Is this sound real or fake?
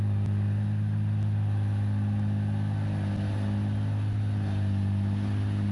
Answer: real